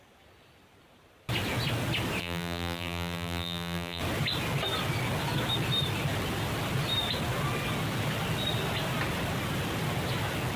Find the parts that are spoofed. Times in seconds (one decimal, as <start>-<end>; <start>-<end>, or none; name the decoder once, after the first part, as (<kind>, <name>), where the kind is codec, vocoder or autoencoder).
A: 2.2-4.0 (vocoder, BigVGAN v2)